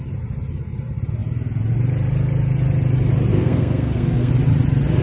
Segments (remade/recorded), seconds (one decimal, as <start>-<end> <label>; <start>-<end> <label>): 0.0-3.3 recorded; 3.3-4.3 remade; 4.3-5.0 recorded